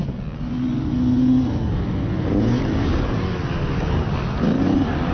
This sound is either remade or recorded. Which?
recorded